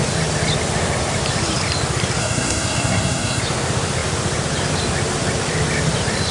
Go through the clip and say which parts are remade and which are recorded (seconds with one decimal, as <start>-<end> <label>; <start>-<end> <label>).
0.0-2.2 recorded; 2.2-3.4 remade; 3.4-6.3 recorded